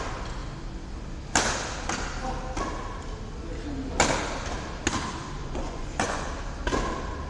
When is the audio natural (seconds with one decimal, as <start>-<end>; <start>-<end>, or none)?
0.0-5.4; 6.3-7.3

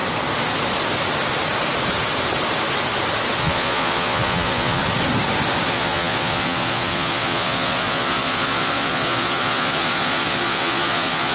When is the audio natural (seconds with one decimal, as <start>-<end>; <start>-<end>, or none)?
0.0-3.4; 4.8-5.7